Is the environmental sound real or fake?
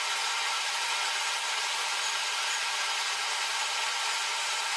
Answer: real